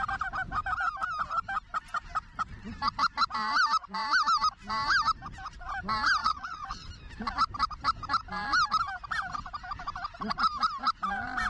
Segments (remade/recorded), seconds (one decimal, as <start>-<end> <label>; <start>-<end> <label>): 0.0-6.2 recorded; 6.2-6.9 remade; 6.9-11.5 recorded